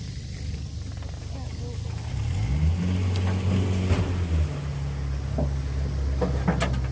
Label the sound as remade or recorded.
recorded